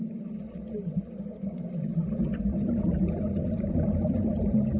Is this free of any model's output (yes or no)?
yes